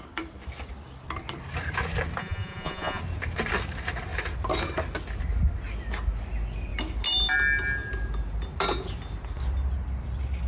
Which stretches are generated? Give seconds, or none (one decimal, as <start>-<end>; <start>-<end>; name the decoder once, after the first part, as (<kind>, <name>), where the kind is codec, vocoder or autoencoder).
2.2-3.0 (vocoder, Vocos)